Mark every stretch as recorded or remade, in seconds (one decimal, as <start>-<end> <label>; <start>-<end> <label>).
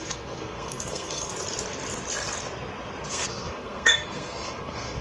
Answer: 0.0-1.3 remade; 1.3-3.1 recorded; 3.1-5.0 remade